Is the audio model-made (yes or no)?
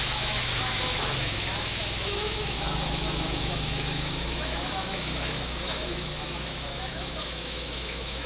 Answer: yes